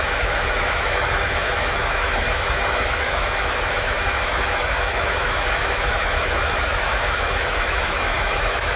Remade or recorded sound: remade